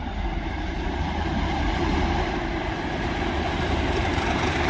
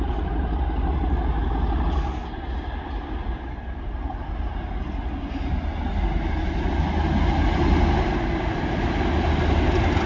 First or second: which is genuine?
second